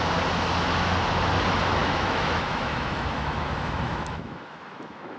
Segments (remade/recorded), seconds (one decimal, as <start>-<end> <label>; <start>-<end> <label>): 0.0-1.8 recorded; 1.8-5.2 remade